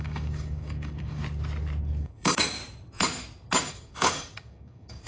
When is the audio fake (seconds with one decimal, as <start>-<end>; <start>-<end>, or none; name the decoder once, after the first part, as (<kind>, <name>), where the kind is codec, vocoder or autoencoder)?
0.0-1.2 (codec, DAC); 2.0-2.6; 3.7-5.1